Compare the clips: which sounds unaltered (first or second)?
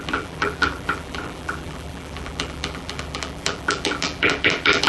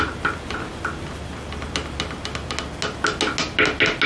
second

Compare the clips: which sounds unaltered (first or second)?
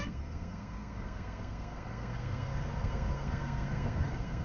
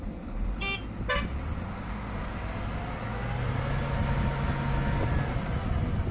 second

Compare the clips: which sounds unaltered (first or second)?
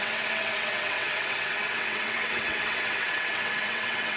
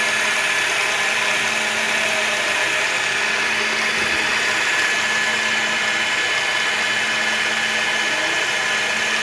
second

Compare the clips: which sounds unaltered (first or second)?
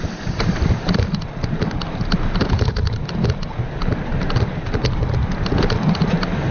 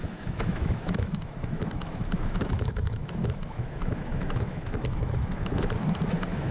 first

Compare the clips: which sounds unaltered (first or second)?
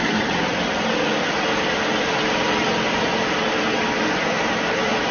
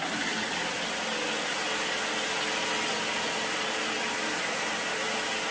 second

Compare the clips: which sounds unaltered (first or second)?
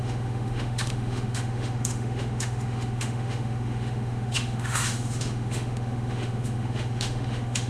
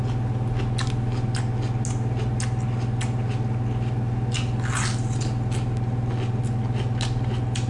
second